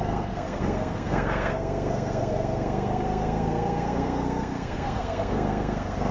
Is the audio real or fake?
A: fake